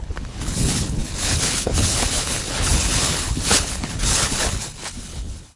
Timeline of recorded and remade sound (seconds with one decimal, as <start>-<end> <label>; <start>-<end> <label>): 0.0-5.6 remade